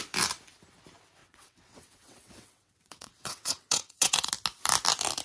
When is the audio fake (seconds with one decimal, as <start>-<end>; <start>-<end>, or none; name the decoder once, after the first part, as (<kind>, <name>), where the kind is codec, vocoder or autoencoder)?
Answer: 1.2-4.3 (vocoder, WaveNeXt)